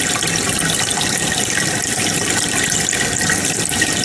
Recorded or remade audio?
recorded